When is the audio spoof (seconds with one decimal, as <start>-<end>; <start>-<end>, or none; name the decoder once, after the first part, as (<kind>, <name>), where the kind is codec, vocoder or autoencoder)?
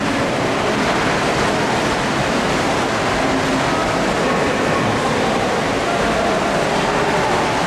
none